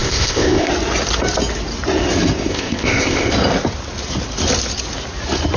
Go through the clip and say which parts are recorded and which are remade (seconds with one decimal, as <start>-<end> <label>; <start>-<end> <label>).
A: 0.0-0.7 remade; 0.7-2.5 recorded; 2.5-3.3 remade; 3.3-5.6 recorded